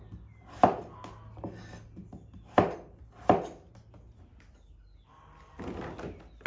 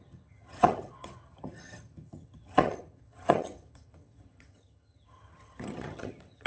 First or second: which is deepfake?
second